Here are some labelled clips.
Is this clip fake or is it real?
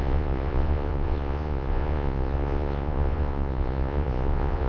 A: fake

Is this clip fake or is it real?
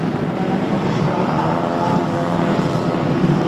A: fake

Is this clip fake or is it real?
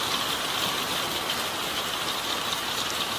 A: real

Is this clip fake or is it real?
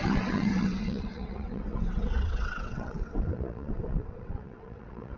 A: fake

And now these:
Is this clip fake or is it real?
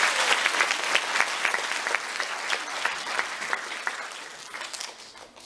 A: real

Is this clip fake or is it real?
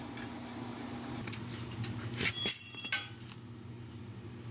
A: real